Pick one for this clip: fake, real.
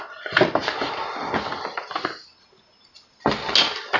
real